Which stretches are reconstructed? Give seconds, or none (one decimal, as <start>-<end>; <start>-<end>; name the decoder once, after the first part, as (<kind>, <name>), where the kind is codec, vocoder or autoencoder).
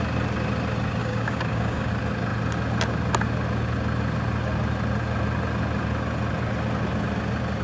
1.0-1.9 (codec, DAC)